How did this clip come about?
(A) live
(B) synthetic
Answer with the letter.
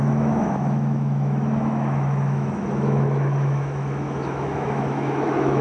B